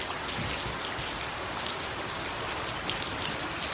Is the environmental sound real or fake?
real